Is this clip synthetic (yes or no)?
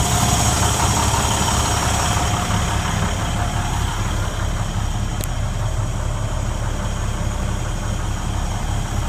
no